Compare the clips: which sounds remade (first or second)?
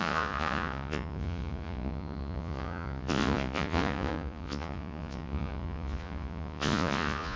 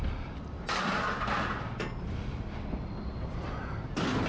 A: first